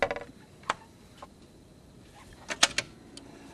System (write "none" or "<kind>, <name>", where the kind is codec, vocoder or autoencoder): none